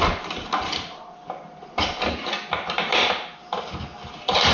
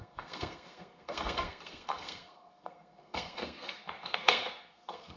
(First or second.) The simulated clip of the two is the second